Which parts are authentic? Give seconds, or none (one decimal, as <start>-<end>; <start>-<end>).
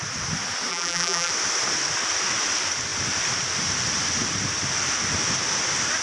0.0-0.7; 1.3-6.0